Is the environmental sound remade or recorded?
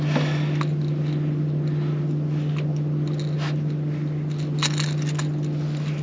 recorded